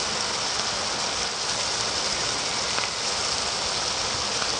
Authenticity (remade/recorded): recorded